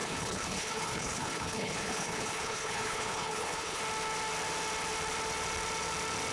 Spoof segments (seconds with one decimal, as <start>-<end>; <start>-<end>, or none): 0.0-3.8

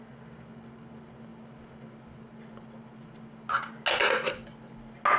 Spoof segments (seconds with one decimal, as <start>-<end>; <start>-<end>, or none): none

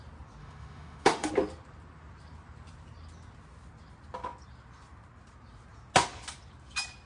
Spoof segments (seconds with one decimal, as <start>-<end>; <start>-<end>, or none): 0.4-1.3

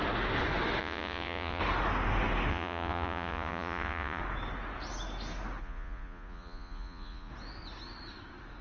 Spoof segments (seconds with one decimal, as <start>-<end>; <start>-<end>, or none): 0.8-1.6; 2.5-4.2; 5.6-7.3